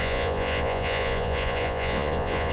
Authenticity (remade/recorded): remade